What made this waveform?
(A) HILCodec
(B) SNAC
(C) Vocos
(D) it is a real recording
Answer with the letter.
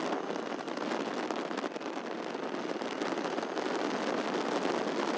D